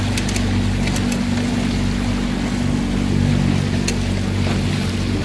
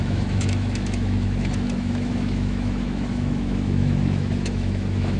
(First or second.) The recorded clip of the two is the first